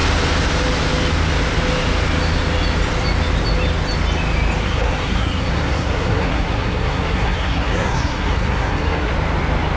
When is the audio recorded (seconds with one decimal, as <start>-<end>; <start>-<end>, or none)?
0.0-4.6; 9.1-9.8

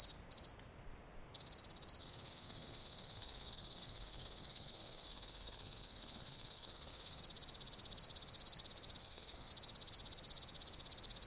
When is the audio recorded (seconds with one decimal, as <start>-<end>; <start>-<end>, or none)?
0.0-2.0; 7.2-9.0; 9.5-11.3

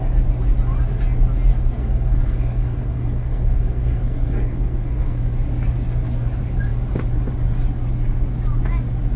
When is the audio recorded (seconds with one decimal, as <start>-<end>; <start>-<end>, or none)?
0.0-1.5; 5.2-9.2

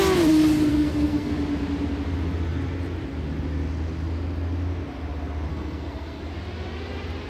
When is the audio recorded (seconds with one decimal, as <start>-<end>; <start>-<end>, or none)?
0.0-0.7; 1.3-5.5; 6.2-7.3

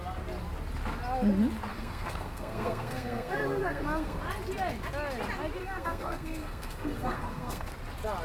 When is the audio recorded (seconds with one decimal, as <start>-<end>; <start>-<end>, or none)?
0.0-1.7; 4.2-5.6; 7.7-8.2

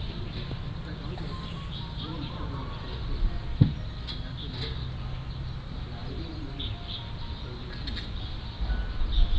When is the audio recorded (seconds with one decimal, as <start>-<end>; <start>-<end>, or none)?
0.0-9.4

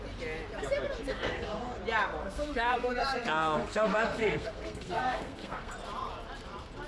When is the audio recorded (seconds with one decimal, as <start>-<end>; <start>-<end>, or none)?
0.0-1.0; 1.8-2.2; 5.7-6.9